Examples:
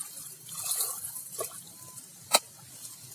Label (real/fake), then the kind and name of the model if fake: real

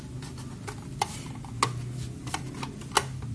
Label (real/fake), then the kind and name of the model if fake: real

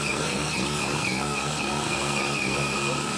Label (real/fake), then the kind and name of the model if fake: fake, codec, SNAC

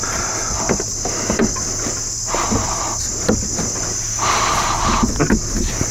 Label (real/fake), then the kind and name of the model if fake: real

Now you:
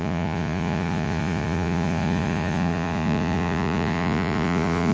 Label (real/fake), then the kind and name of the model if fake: fake, vocoder, Vocos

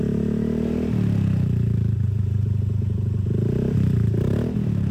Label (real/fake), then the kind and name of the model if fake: fake, vocoder, BigVGAN v2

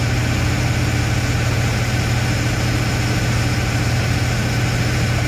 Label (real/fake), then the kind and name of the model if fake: real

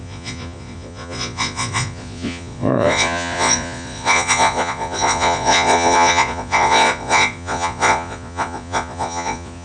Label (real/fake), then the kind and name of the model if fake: fake, vocoder, Vocos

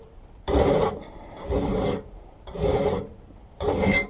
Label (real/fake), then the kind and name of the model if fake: fake, vocoder, BigVGAN v2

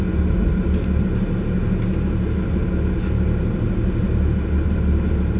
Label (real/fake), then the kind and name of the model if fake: real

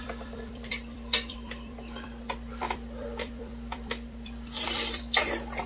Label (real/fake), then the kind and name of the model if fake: fake, vocoder, BigVGAN v2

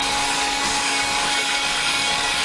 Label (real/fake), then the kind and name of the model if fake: fake, codec, DAC